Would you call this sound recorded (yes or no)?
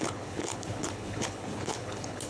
no